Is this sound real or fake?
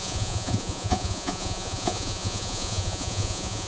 fake